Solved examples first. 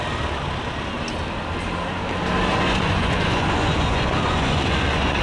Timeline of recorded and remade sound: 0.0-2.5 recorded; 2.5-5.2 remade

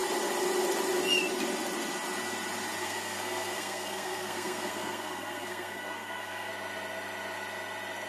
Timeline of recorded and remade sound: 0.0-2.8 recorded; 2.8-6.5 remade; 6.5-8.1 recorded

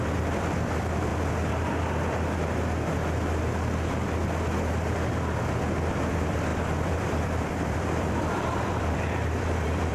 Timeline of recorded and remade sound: 0.0-1.1 remade; 1.1-5.9 recorded; 5.9-9.9 remade